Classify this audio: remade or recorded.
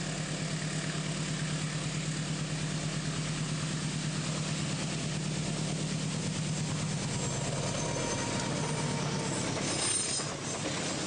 recorded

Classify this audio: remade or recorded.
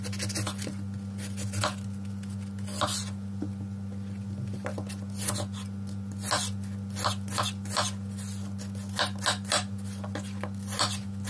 recorded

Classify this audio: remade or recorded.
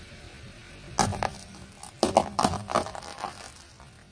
recorded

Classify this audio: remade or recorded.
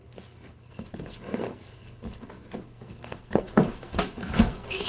remade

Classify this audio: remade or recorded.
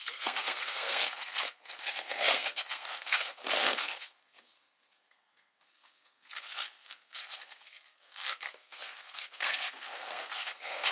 remade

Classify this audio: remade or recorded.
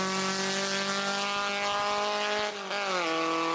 recorded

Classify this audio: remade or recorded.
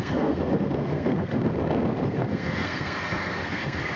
remade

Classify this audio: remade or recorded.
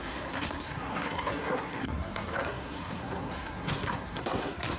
remade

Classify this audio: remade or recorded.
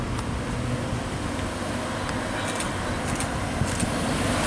recorded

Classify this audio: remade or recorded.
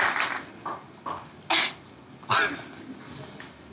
recorded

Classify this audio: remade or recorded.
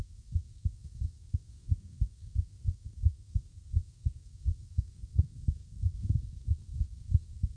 remade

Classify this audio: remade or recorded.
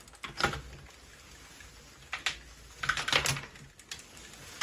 recorded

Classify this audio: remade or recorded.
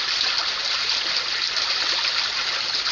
recorded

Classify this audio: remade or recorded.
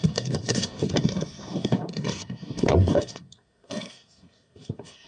remade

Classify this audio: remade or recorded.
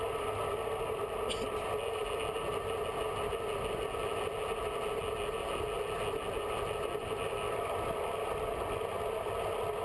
recorded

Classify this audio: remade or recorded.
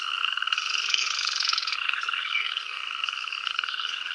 remade